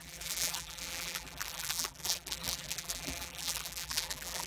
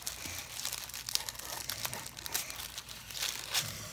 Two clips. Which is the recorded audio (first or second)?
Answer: second